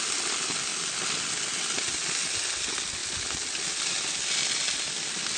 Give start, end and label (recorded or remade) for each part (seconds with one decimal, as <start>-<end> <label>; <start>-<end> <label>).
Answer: 0.0-5.4 recorded